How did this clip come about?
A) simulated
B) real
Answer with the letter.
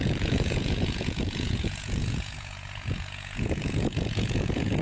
A